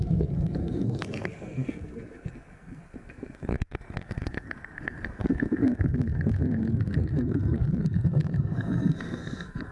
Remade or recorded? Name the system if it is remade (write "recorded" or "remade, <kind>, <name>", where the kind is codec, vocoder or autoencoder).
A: remade, codec, SNAC